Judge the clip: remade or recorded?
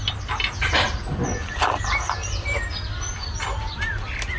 recorded